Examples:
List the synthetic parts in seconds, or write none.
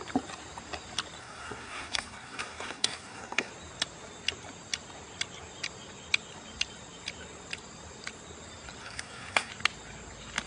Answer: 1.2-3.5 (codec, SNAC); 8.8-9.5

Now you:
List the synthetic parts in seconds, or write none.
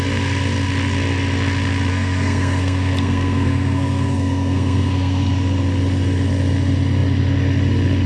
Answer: 1.9-5.2 (codec, SNAC)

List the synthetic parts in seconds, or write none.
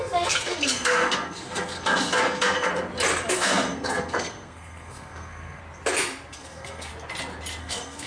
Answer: 0.0-2.7 (codec, SNAC); 3.3-5.6; 6.3-6.9; 7.6-8.1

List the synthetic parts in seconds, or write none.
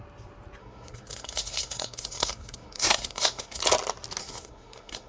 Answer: 0.6-3.6 (codec, SNAC); 4.2-5.1